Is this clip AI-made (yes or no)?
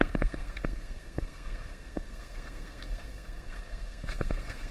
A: yes